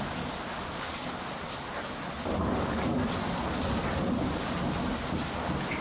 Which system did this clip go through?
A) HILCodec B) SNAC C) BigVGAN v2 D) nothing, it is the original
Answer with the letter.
D